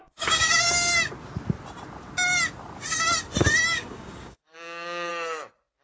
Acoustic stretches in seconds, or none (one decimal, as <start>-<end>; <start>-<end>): 0.9-3.7; 5.1-5.8